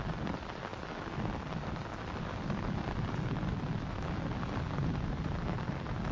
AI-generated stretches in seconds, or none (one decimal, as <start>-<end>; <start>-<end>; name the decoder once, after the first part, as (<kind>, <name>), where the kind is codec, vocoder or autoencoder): none